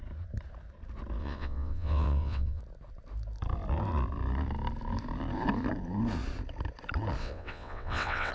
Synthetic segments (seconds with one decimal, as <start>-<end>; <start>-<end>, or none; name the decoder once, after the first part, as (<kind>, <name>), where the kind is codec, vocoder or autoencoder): 1.2-2.6 (vocoder, WaveNeXt); 7.2-8.3